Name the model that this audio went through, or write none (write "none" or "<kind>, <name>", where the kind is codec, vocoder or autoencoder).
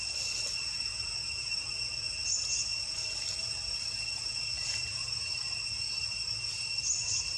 none